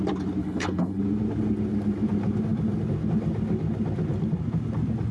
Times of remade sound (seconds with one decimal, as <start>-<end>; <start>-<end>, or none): 0.4-1.0